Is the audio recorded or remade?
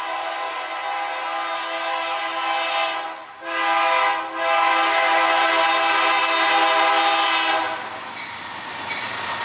recorded